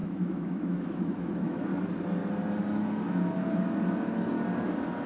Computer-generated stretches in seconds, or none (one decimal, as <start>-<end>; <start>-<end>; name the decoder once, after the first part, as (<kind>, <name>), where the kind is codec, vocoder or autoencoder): 0.0-1.7 (autoencoder, DAC-VAE)